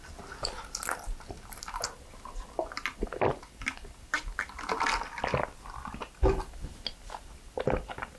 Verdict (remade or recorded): recorded